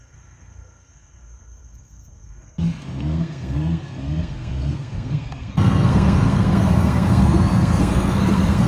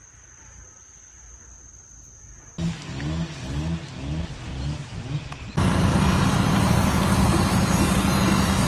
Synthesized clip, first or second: first